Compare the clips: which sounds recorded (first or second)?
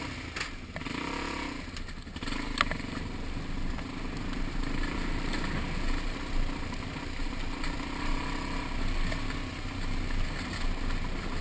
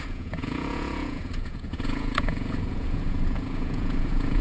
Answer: first